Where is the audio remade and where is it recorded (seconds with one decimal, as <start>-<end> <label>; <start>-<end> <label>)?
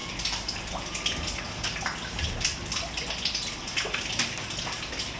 0.0-5.2 recorded